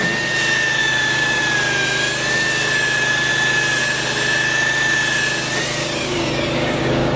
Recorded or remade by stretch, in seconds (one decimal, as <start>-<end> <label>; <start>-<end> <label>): 0.0-0.8 recorded; 0.8-1.4 remade; 1.4-5.8 recorded; 5.8-7.2 remade